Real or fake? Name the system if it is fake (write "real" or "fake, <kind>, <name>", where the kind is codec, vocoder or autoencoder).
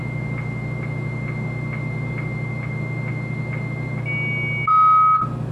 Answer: real